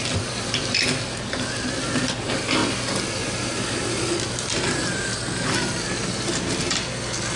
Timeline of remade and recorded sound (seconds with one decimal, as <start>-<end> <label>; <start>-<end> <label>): 0.0-7.4 recorded